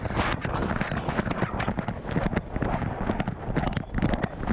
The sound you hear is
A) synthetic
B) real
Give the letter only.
B